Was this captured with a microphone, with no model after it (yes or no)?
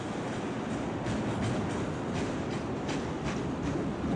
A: yes